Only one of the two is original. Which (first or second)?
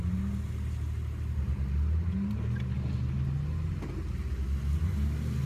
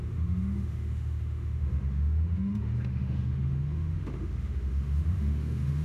first